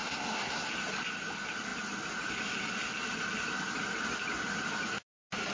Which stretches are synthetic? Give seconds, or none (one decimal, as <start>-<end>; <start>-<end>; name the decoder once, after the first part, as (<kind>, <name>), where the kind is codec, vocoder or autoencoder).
0.0-0.7 (codec, SNAC)